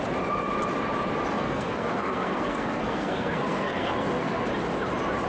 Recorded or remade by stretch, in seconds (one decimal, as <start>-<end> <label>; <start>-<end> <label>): 0.0-1.3 recorded; 1.3-4.5 remade; 4.5-5.3 recorded